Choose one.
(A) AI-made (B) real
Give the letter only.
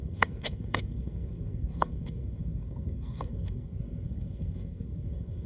A